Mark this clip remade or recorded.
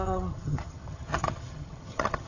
remade